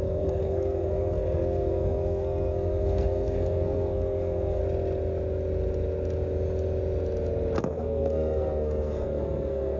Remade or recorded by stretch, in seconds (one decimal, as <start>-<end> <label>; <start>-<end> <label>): 0.0-4.6 remade; 4.6-7.6 recorded; 7.6-9.8 remade